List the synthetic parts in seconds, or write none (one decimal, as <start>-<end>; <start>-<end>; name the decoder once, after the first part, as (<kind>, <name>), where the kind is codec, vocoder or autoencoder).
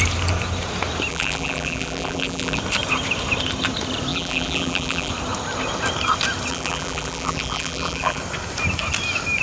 1.1-2.6 (vocoder, BigVGAN v2); 4.1-5.1; 6.5-8.2